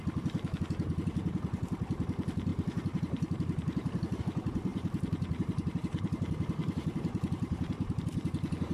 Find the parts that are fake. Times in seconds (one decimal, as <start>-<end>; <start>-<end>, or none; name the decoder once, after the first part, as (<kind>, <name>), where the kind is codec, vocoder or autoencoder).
2.5-4.2 (vocoder, BigVGAN v2); 4.7-8.0